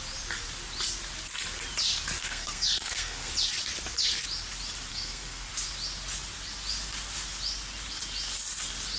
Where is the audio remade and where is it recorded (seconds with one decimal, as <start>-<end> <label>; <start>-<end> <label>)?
0.0-2.2 recorded; 2.2-3.3 remade; 3.3-4.9 recorded; 4.9-5.5 remade; 5.5-9.0 recorded